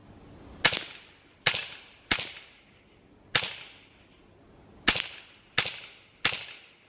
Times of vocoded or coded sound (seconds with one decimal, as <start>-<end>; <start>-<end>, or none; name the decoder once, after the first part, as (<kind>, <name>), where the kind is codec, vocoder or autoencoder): none